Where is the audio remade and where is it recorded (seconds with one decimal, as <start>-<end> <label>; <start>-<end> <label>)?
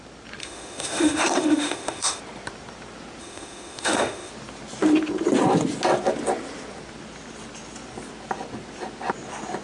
0.0-0.4 recorded; 0.4-2.2 remade; 2.2-3.2 recorded; 3.2-4.3 remade; 4.3-9.6 recorded